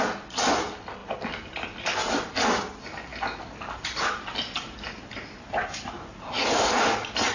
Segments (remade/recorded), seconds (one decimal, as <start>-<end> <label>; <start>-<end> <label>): 0.0-7.3 recorded